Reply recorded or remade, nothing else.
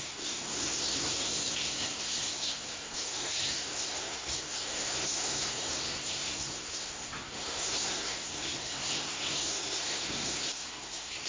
remade